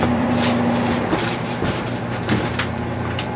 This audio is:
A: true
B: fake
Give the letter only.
B